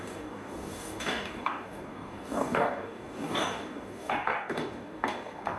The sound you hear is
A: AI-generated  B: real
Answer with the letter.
A